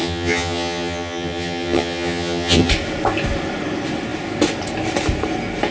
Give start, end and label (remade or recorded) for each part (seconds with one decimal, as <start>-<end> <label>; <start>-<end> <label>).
0.0-2.7 remade; 2.7-5.7 recorded